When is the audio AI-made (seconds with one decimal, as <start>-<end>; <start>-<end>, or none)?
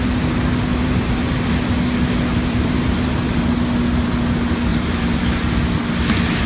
0.7-1.5; 2.3-3.5; 4.7-5.2